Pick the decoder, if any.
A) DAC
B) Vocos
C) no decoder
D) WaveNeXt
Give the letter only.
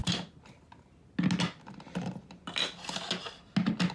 C